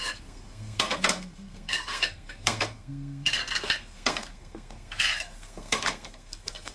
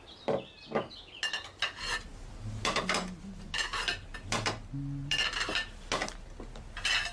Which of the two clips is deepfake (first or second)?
first